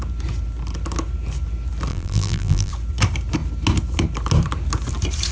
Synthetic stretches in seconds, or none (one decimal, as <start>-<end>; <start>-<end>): 1.9-2.7